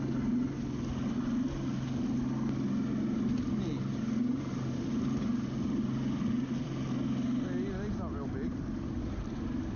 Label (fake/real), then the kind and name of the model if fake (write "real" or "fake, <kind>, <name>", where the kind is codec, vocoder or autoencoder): real